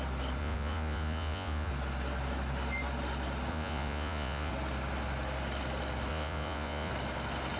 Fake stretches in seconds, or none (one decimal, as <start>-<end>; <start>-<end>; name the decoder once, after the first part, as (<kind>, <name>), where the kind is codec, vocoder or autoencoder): 0.4-1.7 (vocoder, Vocos); 3.5-4.5; 6.1-6.9